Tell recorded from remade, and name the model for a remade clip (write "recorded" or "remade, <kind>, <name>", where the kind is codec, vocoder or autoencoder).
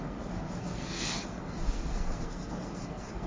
remade, codec, SNAC